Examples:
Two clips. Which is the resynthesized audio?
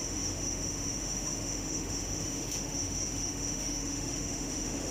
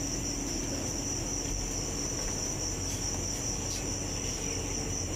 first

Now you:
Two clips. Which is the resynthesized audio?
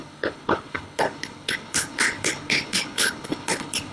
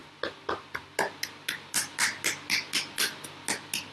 first